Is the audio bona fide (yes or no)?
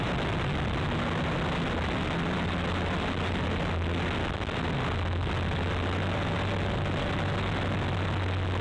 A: yes